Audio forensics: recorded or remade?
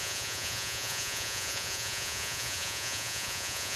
remade